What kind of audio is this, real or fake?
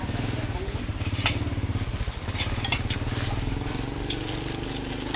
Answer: real